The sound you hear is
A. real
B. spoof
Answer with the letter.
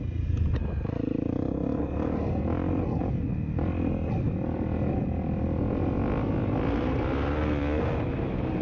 A